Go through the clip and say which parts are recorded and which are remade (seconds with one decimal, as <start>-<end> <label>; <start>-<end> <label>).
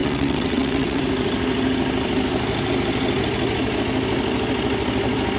0.0-1.0 remade; 1.0-5.4 recorded